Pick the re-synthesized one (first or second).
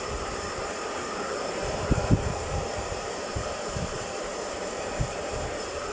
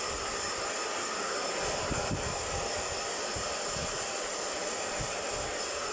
first